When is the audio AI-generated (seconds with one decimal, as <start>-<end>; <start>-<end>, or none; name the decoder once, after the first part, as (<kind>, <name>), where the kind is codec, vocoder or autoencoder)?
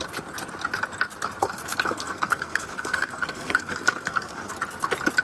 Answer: 1.4-4.5 (codec, SNAC)